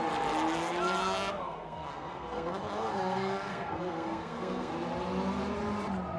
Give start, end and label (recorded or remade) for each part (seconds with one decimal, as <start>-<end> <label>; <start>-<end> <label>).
0.0-1.0 recorded; 1.0-4.7 remade; 4.7-6.2 recorded